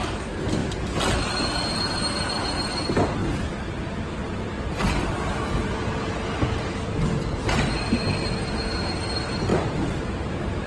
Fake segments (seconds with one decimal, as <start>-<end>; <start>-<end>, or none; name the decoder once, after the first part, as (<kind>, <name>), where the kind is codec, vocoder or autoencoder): 0.6-1.3 (vocoder, BigVGAN v2); 3.2-7.0; 9.5-10.7